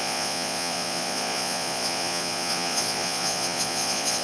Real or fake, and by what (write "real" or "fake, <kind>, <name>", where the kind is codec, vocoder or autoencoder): fake, vocoder, Vocos